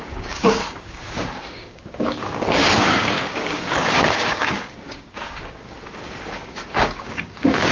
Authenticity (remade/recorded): remade